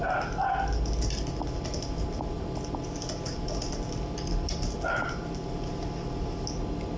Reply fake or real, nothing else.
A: real